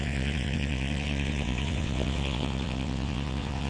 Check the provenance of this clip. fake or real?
fake